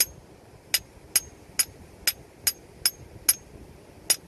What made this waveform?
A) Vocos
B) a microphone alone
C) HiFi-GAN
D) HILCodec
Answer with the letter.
B